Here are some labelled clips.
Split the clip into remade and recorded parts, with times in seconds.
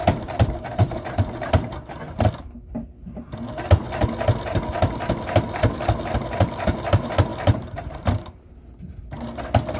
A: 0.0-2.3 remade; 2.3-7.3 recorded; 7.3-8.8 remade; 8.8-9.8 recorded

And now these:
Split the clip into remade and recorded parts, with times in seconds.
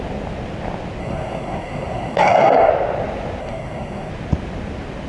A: 0.0-1.0 recorded; 1.0-2.7 remade; 2.7-3.4 recorded; 3.4-4.1 remade; 4.1-5.1 recorded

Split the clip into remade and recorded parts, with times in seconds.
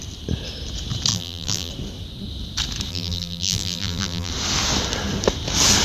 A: 0.0-1.1 recorded; 1.1-1.7 remade; 1.7-2.9 recorded; 2.9-4.3 remade; 4.3-5.8 recorded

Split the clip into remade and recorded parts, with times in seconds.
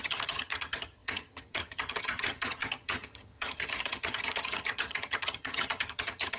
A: 0.0-6.4 remade